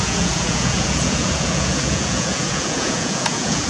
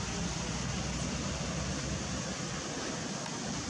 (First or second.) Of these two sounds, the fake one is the first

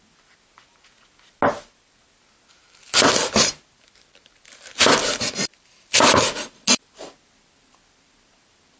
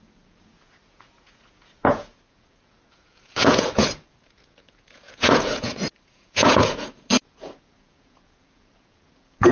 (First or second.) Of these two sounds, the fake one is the second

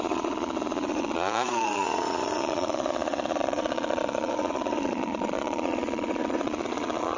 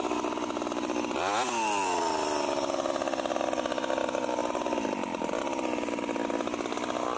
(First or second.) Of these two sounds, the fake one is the first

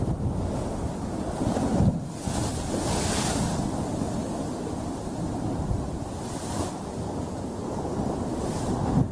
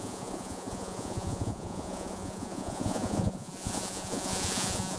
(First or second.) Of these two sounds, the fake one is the second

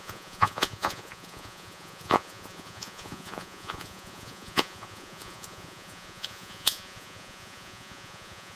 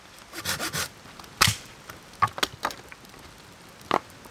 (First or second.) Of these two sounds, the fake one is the first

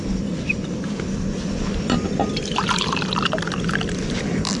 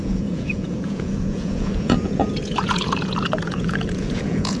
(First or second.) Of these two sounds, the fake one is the second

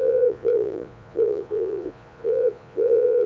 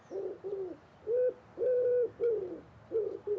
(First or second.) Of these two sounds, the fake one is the first